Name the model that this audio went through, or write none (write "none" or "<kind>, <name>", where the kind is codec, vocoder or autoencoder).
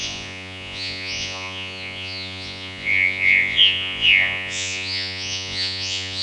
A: vocoder, Vocos